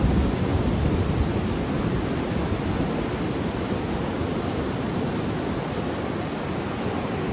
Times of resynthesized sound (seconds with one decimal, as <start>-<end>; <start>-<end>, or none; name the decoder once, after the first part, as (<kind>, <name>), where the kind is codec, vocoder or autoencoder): none